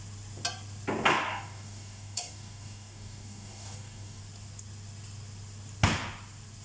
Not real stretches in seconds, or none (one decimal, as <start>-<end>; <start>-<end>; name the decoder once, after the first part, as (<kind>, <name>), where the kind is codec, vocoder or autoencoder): 1.3-4.2 (codec, DAC)